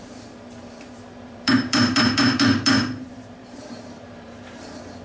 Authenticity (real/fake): fake